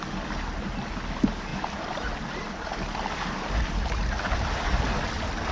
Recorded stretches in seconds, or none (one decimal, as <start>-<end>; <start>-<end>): 0.0-5.5